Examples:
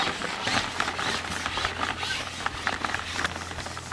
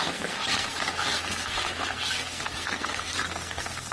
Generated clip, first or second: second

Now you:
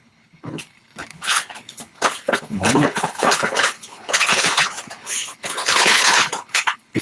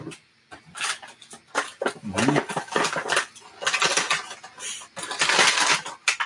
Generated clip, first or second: first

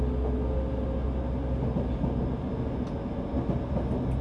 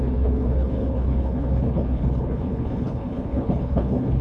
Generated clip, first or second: second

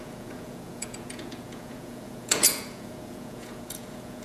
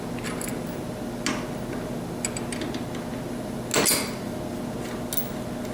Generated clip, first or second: first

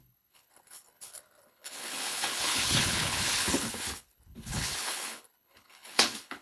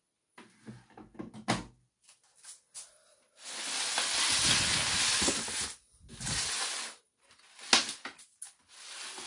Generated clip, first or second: first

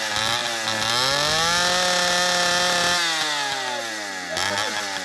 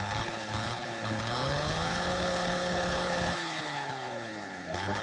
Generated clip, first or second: second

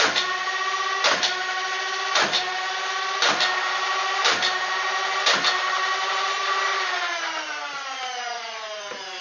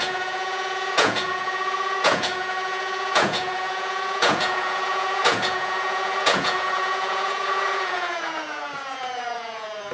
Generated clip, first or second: second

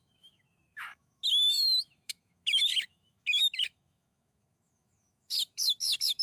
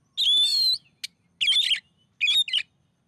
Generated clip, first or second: first